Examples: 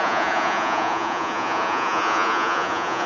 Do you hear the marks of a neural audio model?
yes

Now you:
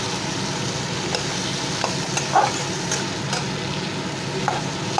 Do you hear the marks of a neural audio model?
no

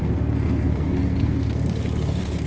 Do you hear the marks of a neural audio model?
yes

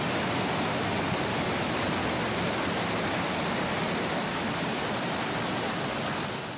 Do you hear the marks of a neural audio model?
no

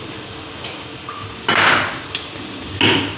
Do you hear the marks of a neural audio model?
no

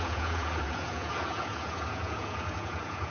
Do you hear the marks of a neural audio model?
yes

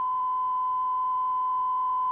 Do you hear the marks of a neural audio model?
no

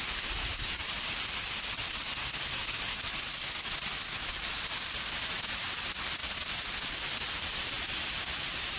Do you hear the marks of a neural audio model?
no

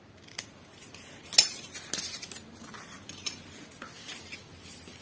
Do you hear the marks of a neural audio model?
no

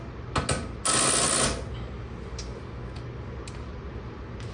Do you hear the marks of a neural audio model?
no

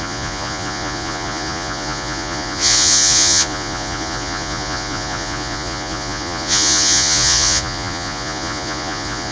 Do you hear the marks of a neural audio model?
yes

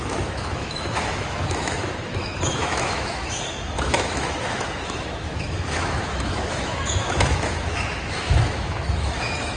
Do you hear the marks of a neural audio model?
yes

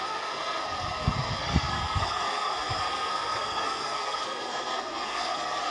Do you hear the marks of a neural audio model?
yes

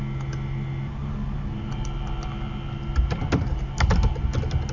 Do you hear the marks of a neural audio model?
no